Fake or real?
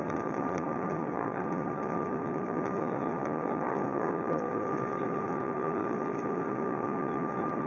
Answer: fake